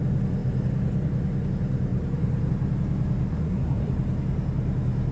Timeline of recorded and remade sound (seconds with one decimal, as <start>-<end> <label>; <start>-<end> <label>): 0.0-3.3 recorded; 3.3-3.9 remade; 3.9-5.1 recorded

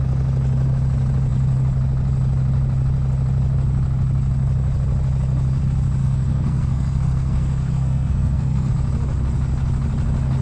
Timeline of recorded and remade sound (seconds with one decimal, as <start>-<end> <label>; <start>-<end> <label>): 0.0-6.0 recorded; 6.0-8.7 remade; 8.7-10.4 recorded

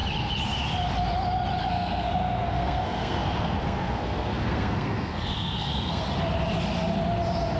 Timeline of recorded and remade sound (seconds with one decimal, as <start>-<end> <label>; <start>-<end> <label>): 0.0-1.6 recorded; 1.6-6.0 remade; 6.0-7.6 recorded